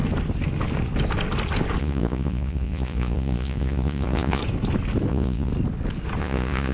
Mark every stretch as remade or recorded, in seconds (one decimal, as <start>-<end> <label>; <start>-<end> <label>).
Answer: 0.0-1.8 recorded; 1.8-4.4 remade; 4.4-5.1 recorded; 5.1-5.5 remade; 5.5-6.2 recorded; 6.2-6.7 remade